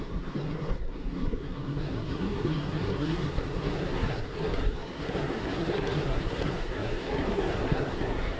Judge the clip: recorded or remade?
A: remade